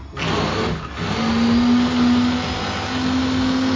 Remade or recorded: recorded